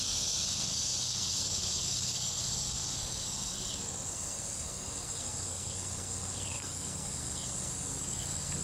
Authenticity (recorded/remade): remade